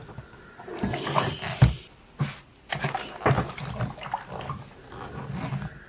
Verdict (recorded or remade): recorded